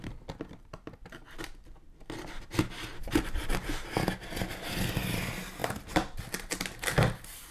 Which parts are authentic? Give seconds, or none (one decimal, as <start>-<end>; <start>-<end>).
0.0-2.9; 3.9-5.6; 6.2-7.5

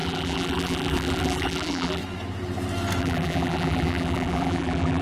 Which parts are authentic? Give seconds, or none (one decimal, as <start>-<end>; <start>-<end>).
2.0-3.0

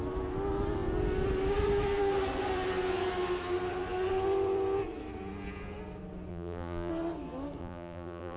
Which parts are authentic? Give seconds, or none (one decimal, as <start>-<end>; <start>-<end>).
0.0-6.3; 6.9-7.6